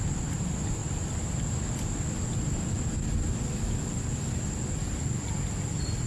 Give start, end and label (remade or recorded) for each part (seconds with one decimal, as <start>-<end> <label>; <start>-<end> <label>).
0.0-6.1 recorded